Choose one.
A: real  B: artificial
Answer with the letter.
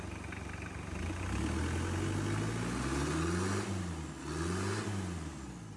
A